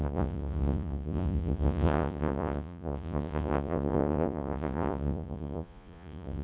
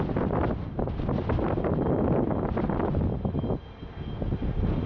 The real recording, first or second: second